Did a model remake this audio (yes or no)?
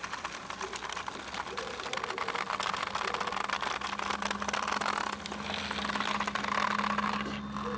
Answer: no